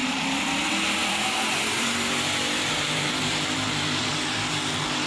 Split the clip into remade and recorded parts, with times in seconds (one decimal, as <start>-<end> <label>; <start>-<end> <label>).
0.0-0.6 remade; 0.6-1.0 recorded; 1.0-4.1 remade; 4.1-5.1 recorded